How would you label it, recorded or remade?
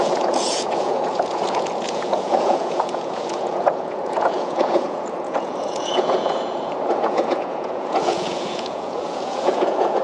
remade